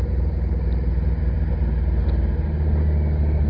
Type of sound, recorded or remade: recorded